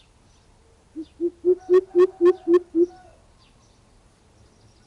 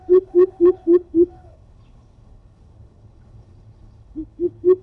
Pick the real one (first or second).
first